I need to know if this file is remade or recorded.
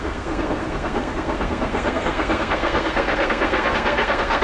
remade